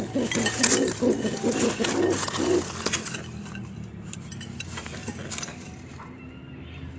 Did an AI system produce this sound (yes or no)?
no